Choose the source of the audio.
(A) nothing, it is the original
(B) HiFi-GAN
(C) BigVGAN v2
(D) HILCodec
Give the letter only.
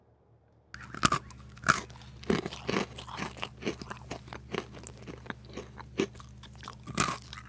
A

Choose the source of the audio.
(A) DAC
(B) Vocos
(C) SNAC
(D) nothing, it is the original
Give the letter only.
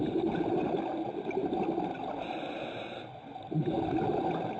D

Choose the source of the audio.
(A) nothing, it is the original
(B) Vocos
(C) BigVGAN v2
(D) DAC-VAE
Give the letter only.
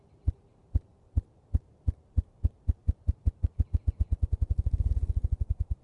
C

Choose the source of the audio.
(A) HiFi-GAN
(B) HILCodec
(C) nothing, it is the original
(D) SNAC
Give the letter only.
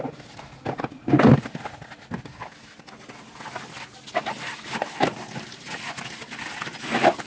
C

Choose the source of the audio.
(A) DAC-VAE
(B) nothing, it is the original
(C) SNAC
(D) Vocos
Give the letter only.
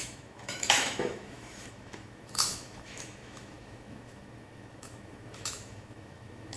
A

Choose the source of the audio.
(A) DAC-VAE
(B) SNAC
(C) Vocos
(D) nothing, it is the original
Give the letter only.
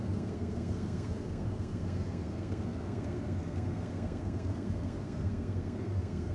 B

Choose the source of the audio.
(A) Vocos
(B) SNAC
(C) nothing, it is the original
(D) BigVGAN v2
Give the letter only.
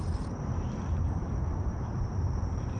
D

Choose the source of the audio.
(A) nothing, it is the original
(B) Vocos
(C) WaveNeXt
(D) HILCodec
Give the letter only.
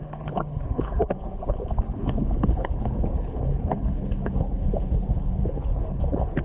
D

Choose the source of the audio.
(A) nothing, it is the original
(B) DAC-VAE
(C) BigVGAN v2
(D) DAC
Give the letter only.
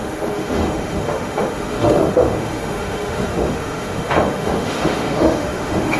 B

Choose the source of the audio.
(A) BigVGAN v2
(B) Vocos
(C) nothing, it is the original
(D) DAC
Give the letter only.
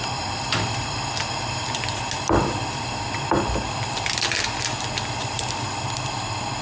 A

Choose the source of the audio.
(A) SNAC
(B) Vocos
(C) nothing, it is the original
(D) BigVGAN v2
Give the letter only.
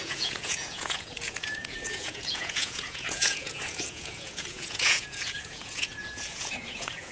B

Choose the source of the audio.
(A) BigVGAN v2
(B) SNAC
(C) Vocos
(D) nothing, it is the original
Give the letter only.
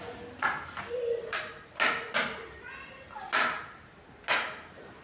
D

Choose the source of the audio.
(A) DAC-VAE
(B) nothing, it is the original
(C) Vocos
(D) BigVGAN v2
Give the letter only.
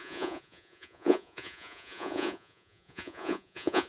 C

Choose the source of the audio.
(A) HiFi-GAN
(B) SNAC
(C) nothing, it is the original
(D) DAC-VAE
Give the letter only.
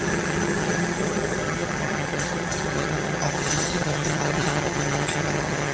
A